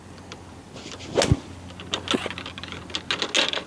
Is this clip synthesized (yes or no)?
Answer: no